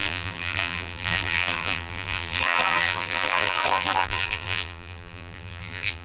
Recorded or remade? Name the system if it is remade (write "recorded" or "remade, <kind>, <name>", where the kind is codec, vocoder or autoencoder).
remade, vocoder, BigVGAN v2